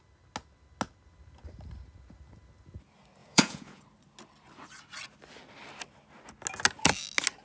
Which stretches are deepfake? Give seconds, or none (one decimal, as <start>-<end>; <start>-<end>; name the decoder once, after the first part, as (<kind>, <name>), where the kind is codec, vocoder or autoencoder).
3.2-3.8 (vocoder, Vocos)